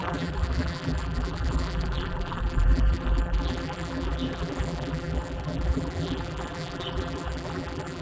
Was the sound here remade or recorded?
remade